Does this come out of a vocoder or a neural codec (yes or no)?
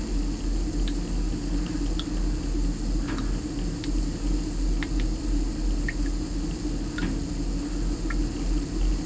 no